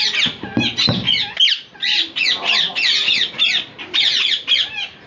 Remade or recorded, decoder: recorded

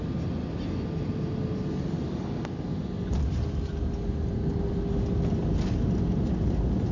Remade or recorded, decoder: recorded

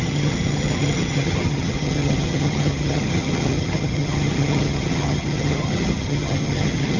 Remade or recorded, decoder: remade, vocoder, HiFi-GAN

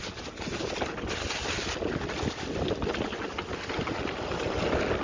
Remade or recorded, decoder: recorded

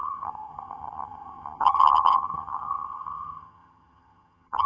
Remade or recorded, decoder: remade, vocoder, HiFi-GAN